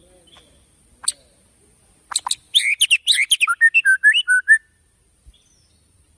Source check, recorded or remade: recorded